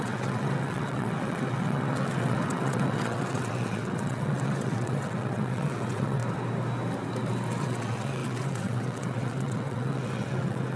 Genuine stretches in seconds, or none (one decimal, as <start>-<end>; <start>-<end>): 6.2-7.6